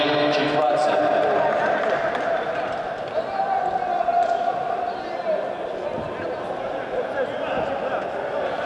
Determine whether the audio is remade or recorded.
recorded